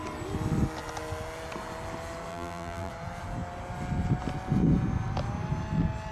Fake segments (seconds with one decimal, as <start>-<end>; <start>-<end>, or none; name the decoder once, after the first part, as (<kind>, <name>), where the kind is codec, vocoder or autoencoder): 2.3-2.9 (vocoder, BigVGAN v2)